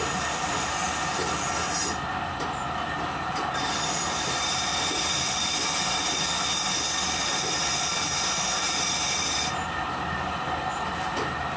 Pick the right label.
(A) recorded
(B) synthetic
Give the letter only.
A